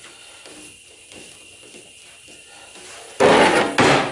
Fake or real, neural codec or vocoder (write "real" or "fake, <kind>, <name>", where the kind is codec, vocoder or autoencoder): real